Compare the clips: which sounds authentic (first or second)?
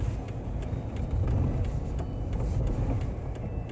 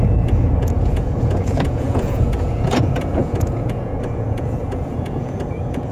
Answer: first